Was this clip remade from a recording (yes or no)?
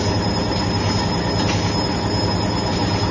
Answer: no